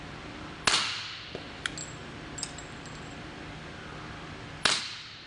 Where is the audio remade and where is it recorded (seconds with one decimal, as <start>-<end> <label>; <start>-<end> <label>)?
0.0-5.3 recorded